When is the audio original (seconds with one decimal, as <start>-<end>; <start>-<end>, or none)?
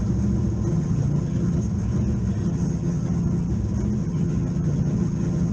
0.0-0.7; 1.6-2.4; 3.5-4.0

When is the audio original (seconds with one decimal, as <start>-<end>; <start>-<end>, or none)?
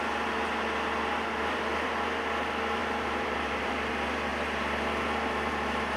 0.0-2.8; 3.9-6.0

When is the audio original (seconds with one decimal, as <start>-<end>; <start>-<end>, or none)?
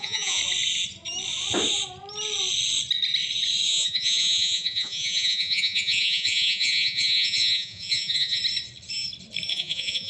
0.4-3.7; 8.4-9.5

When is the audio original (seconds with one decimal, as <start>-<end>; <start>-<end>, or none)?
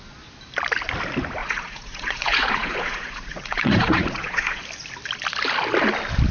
0.0-1.4; 4.6-6.3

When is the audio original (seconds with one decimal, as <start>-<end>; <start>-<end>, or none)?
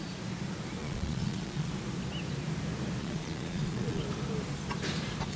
0.0-0.8; 1.7-3.0; 4.0-5.4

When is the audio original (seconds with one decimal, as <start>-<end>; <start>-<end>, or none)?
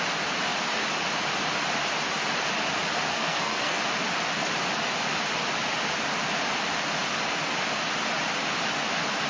0.0-3.1; 3.8-9.3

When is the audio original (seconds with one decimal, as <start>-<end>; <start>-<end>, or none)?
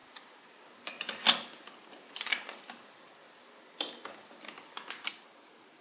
0.0-5.8